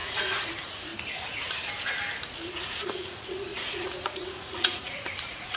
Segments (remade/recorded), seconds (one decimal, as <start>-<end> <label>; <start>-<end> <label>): 0.0-0.9 remade; 0.9-2.5 recorded; 2.5-5.6 remade